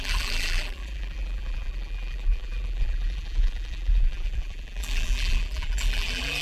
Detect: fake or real fake